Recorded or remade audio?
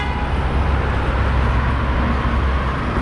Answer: recorded